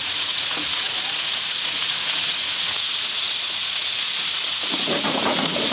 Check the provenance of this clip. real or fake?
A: fake